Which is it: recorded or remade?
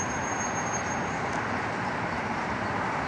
recorded